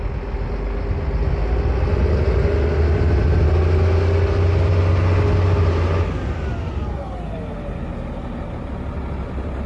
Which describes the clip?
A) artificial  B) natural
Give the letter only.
B